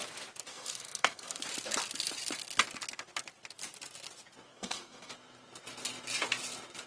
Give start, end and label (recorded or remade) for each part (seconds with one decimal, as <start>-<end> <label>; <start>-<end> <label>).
0.0-0.5 recorded; 0.5-1.4 remade; 1.4-4.5 recorded; 4.5-5.1 remade; 5.1-6.9 recorded